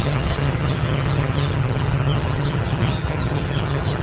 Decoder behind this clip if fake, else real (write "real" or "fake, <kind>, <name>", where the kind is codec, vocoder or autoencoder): fake, vocoder, HiFi-GAN